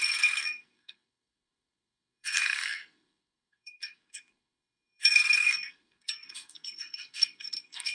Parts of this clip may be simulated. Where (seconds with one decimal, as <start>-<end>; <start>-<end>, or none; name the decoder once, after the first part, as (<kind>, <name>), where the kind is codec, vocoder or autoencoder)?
0.0-7.9 (codec, SNAC)